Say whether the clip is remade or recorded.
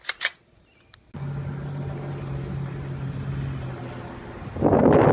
recorded